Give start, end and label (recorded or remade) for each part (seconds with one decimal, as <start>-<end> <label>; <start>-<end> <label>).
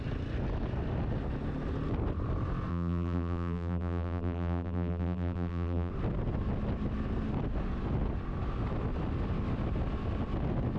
0.0-2.7 recorded; 2.7-5.9 remade; 5.9-10.8 recorded